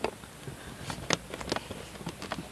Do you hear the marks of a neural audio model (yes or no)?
no